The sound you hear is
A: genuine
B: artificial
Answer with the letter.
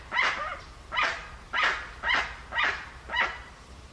B